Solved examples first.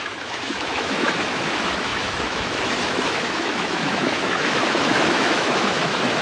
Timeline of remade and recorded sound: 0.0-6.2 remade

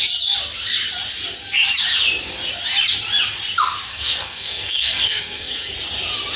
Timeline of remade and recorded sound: 0.0-3.9 recorded; 3.9-5.7 remade; 5.7-6.4 recorded

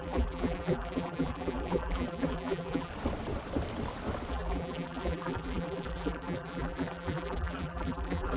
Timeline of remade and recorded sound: 0.0-2.9 remade; 2.9-4.3 recorded; 4.3-8.4 remade